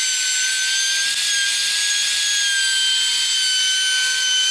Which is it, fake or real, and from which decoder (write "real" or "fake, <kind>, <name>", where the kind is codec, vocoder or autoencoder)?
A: real